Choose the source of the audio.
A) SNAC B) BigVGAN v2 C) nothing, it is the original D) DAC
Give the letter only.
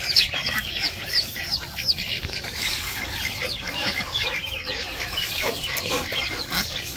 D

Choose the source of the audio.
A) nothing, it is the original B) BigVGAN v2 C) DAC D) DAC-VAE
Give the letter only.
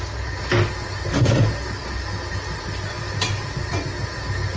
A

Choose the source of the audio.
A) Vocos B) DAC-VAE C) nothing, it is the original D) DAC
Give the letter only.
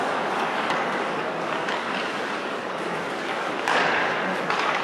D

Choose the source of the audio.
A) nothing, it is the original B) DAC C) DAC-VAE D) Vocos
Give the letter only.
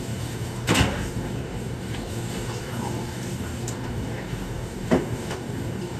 B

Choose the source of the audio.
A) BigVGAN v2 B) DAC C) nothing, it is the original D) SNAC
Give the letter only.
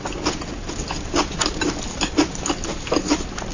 C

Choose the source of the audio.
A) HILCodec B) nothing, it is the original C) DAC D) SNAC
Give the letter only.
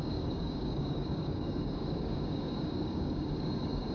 C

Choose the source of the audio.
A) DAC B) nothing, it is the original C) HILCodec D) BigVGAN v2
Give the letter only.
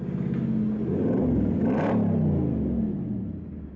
B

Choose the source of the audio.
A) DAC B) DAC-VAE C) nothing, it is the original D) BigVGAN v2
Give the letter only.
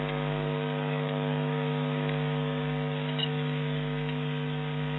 A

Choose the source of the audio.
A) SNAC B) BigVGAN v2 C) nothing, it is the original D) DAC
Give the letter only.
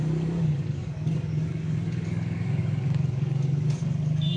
D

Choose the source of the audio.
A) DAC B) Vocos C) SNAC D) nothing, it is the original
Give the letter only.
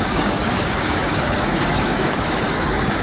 A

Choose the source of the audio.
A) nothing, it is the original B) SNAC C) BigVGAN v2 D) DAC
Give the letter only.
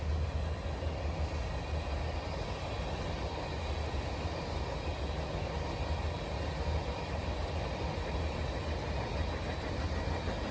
A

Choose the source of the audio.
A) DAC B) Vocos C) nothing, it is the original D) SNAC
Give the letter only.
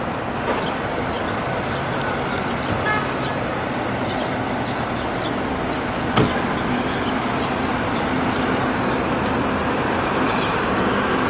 C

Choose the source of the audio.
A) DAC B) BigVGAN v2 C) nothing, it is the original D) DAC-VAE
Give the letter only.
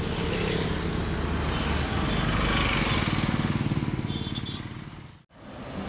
C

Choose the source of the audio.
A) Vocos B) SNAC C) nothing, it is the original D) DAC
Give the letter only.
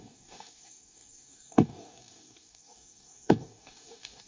D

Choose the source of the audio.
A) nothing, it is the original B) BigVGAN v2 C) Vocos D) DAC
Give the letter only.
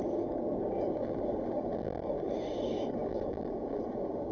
D